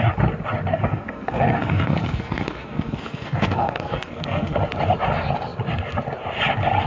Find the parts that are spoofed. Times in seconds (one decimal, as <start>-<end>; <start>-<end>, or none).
0.7-4.6